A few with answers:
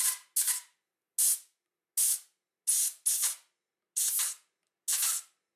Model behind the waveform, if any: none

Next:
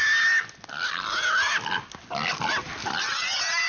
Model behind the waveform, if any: none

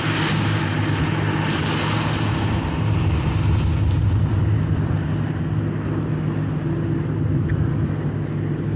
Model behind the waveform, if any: none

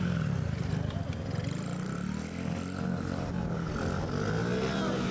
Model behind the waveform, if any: none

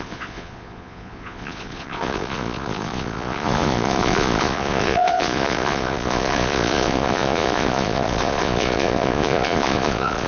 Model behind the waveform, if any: vocoder, Vocos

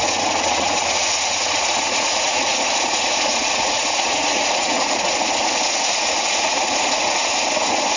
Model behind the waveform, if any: vocoder, Vocos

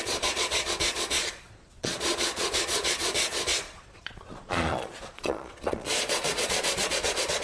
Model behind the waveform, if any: vocoder, Vocos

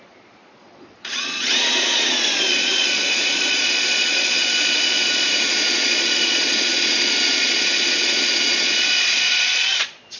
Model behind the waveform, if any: vocoder, Vocos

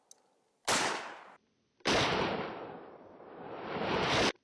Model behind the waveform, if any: none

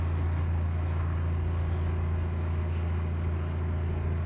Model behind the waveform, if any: none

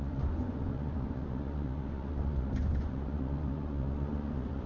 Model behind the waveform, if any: vocoder, Vocos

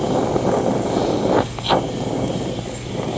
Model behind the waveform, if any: none